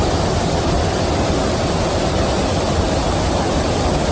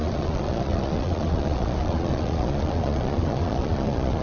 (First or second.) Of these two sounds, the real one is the first